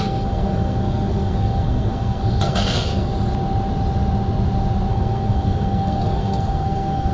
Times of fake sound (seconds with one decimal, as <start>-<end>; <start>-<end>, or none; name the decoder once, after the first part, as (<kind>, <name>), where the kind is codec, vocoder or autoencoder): 0.0-3.1 (codec, SNAC); 4.9-7.1